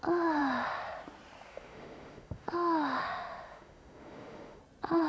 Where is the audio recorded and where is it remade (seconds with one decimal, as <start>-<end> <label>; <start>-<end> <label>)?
0.0-1.5 recorded; 1.5-4.6 remade; 4.6-5.1 recorded